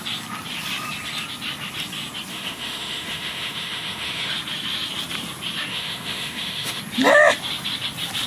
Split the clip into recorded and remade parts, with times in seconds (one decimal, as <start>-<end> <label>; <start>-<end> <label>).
0.0-2.3 recorded; 2.3-4.3 remade; 4.3-5.7 recorded; 5.7-6.8 remade; 6.8-8.3 recorded